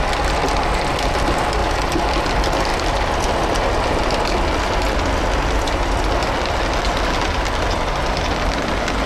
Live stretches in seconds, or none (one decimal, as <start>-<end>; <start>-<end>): 0.0-9.1